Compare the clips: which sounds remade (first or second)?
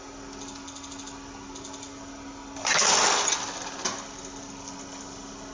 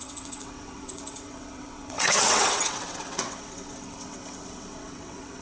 second